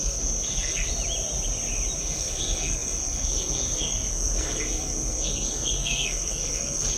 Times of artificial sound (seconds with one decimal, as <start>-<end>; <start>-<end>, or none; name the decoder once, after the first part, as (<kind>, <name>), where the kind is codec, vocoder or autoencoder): 0.0-0.9 (codec, SNAC); 2.0-7.0